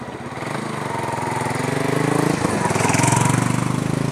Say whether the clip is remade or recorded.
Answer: recorded